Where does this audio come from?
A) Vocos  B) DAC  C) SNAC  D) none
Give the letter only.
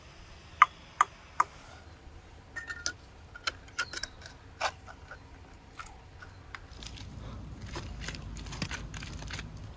D